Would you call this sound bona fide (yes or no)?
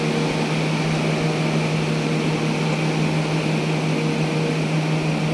yes